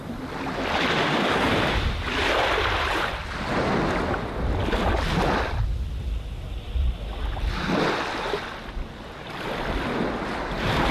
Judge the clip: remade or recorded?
recorded